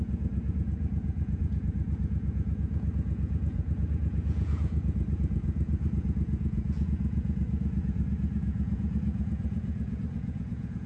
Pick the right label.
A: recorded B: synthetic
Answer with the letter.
B